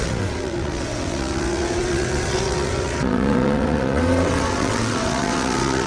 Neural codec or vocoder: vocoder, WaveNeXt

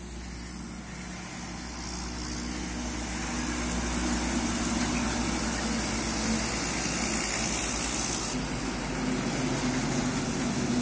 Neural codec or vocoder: none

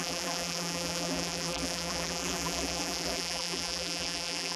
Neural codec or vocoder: vocoder, BigVGAN v2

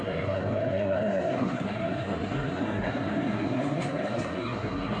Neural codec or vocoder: codec, SNAC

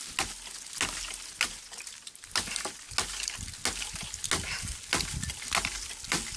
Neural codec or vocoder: none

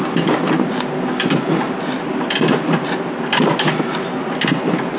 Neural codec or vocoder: none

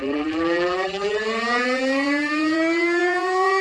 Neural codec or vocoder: vocoder, BigVGAN v2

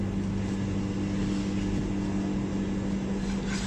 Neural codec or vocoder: none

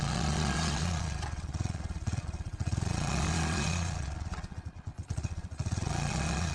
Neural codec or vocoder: vocoder, Vocos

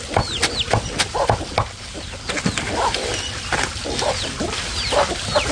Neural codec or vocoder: none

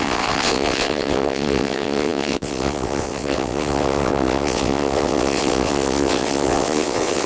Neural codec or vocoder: vocoder, WaveNeXt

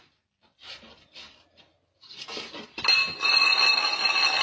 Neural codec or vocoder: none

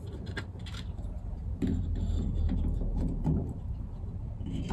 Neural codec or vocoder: vocoder, BigVGAN v2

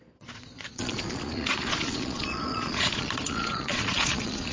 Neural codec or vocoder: vocoder, Vocos